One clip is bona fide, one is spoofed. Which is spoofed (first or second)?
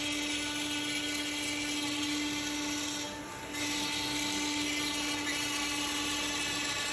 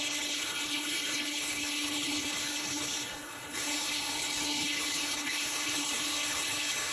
second